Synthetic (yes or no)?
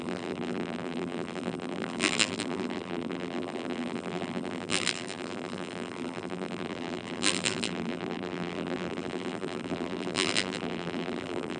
yes